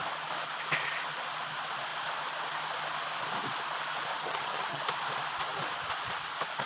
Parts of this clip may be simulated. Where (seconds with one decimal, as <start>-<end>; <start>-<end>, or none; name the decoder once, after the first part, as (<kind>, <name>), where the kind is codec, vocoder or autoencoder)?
4.1-4.8 (vocoder, HiFi-GAN)